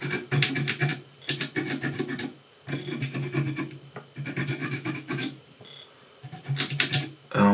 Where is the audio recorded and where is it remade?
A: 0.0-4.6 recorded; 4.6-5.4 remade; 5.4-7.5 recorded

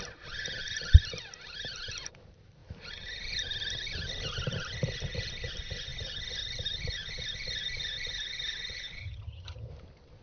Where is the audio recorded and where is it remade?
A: 0.0-9.0 recorded; 9.0-9.7 remade; 9.7-10.2 recorded

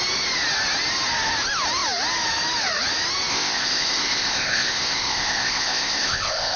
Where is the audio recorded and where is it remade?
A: 0.0-3.3 recorded; 3.3-6.6 remade

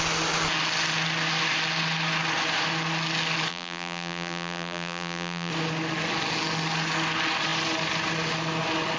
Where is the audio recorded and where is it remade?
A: 0.0-3.5 recorded; 3.5-5.5 remade; 5.5-9.0 recorded

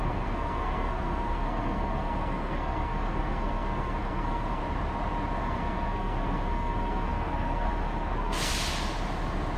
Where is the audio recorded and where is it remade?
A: 0.0-4.6 remade; 4.6-5.4 recorded; 5.4-8.5 remade; 8.5-9.6 recorded

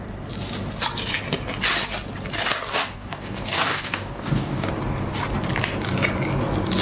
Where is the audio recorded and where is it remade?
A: 0.0-2.7 recorded; 2.7-4.7 remade; 4.7-6.8 recorded

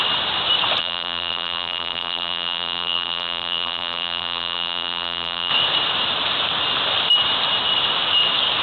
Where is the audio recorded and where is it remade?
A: 0.0-0.8 recorded; 0.8-5.5 remade; 5.5-8.6 recorded

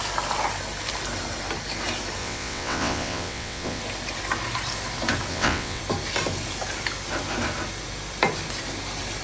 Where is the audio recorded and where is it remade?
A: 0.0-2.2 recorded; 2.2-3.8 remade; 3.8-5.3 recorded; 5.3-5.8 remade; 5.8-9.2 recorded